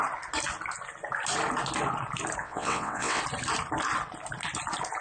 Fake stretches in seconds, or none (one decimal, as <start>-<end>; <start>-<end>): 2.4-3.2